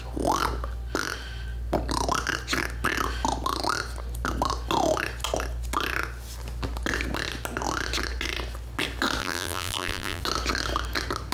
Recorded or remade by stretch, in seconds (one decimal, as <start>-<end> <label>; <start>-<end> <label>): 0.0-9.2 recorded; 9.2-10.2 remade; 10.2-11.3 recorded